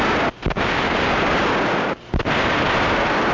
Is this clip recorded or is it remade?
recorded